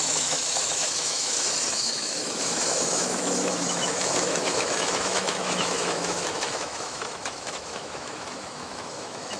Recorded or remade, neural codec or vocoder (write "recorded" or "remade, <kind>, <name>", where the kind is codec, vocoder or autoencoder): remade, autoencoder, DAC-VAE